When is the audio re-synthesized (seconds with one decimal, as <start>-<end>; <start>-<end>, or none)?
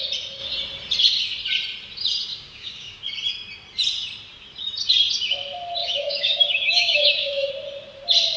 2.3-3.0; 5.8-7.5